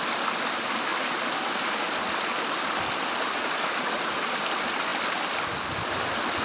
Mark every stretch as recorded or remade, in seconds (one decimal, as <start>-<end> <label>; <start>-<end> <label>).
0.0-6.4 recorded